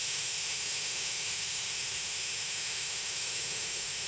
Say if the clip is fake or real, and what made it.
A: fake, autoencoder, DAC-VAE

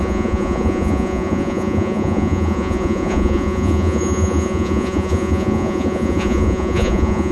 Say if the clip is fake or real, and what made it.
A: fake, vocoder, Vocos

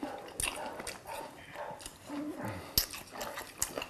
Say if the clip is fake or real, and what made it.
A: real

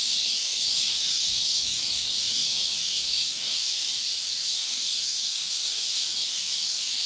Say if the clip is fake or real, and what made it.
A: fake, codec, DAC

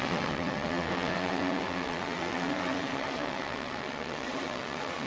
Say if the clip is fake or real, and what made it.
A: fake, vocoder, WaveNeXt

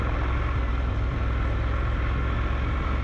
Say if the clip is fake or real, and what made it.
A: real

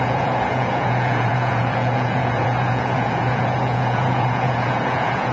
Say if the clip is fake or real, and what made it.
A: fake, vocoder, Vocos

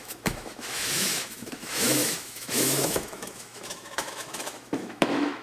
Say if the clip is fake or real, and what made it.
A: fake, autoencoder, DAC-VAE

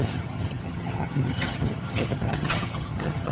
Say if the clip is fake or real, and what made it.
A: fake, vocoder, HiFi-GAN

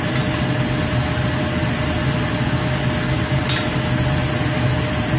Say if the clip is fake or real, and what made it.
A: real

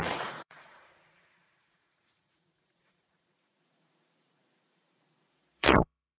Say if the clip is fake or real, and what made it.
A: fake, vocoder, Vocos